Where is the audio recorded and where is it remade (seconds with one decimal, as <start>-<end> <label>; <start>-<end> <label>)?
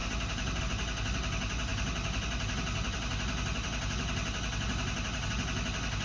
0.0-6.0 recorded